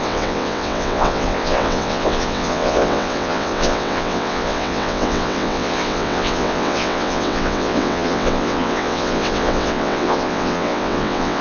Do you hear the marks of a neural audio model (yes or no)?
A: yes